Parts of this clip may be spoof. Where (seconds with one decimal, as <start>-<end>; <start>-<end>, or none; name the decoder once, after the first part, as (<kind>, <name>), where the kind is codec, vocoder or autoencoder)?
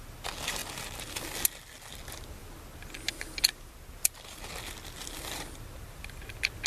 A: none